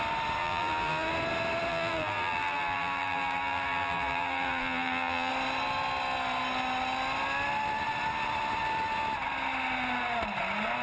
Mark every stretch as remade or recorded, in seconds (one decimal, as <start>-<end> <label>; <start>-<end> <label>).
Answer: 0.0-0.4 recorded; 0.4-1.1 remade; 1.1-1.7 recorded; 1.7-5.3 remade; 5.3-10.8 recorded